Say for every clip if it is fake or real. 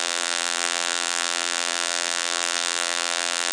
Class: fake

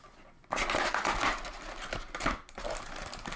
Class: real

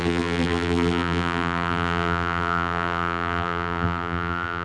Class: fake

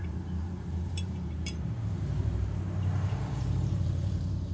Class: fake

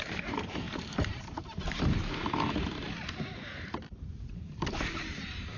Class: fake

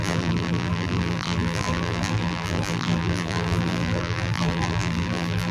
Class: fake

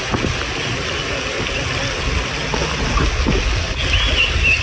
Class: real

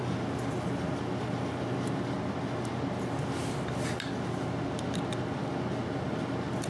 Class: real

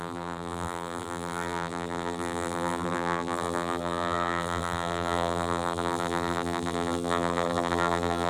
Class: fake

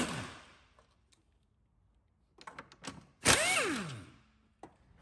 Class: real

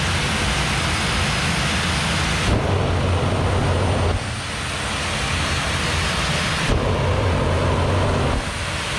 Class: real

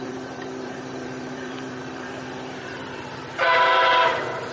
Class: fake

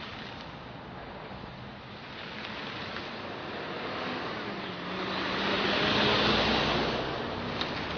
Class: real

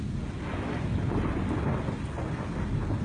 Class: real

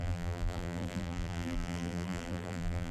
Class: fake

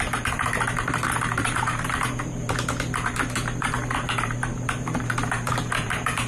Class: fake